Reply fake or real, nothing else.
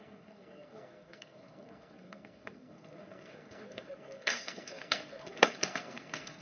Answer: fake